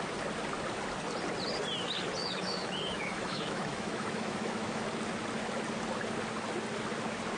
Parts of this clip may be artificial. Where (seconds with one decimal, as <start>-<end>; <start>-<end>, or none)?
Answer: 2.2-4.8